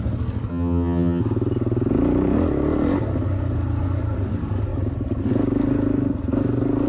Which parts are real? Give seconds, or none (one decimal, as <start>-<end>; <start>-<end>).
0.0-0.5; 1.2-6.9